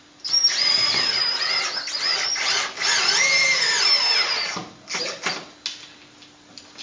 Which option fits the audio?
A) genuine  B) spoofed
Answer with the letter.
A